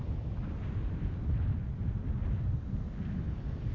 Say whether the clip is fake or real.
real